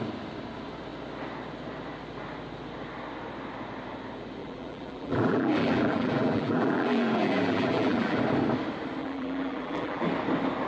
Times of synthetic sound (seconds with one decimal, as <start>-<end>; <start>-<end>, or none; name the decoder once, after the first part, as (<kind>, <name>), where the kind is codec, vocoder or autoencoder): 4.4-8.2 (vocoder, BigVGAN v2); 9.0-10.1